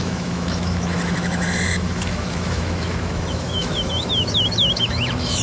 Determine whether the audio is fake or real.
fake